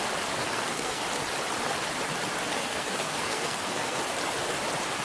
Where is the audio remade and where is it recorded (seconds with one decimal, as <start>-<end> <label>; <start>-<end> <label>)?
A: 0.0-0.4 recorded; 0.4-1.0 remade; 1.0-2.5 recorded; 2.5-4.0 remade; 4.0-5.0 recorded